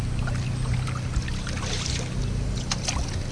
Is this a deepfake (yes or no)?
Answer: no